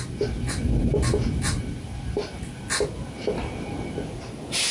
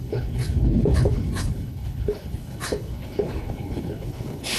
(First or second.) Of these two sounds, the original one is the first